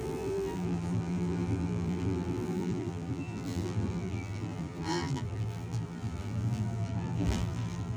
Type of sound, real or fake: fake